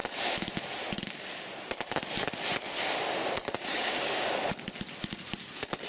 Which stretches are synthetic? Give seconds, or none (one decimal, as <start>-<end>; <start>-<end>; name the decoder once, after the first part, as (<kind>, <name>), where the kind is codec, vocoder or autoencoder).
3.7-4.3 (codec, DAC)